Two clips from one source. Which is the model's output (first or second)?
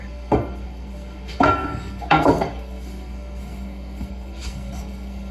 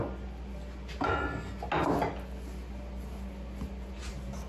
first